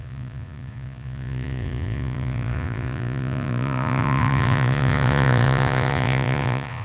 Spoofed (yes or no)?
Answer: yes